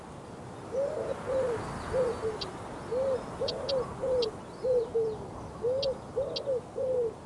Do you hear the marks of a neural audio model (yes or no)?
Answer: no